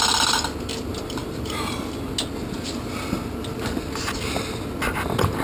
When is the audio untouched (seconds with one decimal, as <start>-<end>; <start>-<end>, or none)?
0.0-0.9; 1.7-5.4